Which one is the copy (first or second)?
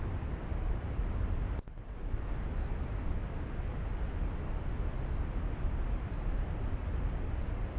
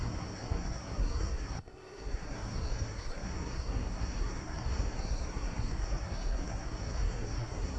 second